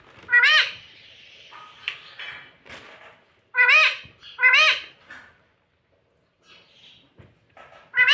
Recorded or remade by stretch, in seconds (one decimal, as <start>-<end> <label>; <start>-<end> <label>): 0.0-8.1 recorded